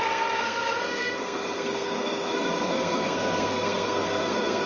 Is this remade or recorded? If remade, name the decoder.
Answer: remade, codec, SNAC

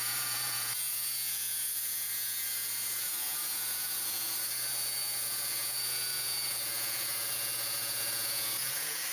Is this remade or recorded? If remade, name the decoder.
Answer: remade, vocoder, Vocos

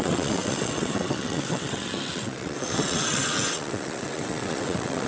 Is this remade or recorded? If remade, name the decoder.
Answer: remade, vocoder, WaveNeXt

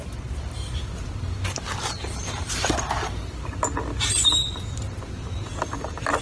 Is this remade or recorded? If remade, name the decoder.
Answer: recorded